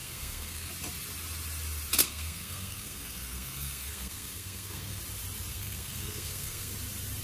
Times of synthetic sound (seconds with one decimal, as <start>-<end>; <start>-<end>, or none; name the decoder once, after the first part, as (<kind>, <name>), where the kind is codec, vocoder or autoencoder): 0.0-0.7 (codec, SNAC); 2.0-5.0; 5.5-6.7